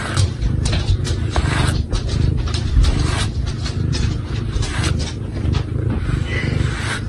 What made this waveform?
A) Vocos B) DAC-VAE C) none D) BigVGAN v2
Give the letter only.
D